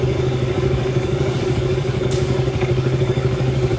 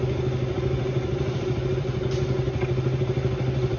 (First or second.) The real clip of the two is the second